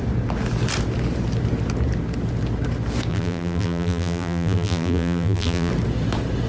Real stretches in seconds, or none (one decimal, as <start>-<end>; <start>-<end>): 0.0-3.1; 5.7-6.5